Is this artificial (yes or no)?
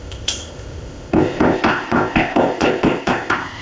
yes